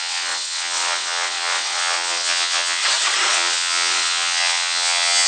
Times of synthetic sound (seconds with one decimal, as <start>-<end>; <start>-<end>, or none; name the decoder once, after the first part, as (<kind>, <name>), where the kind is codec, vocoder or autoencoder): 0.0-2.8 (vocoder, WaveNeXt); 3.3-5.3